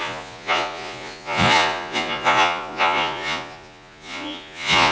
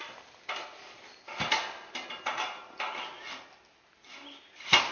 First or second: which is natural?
second